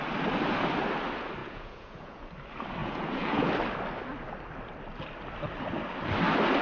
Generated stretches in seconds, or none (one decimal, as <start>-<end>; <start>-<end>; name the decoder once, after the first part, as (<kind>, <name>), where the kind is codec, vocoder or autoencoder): 1.4-2.3 (vocoder, Vocos); 2.8-3.5